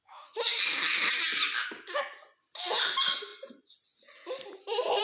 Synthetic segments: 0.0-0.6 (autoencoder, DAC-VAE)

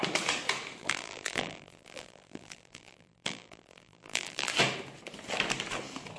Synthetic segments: 0.8-4.5 (vocoder, BigVGAN v2)

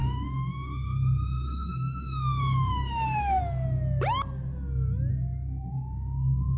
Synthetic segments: 0.0-3.4 (autoencoder, DAC-VAE); 5.1-6.6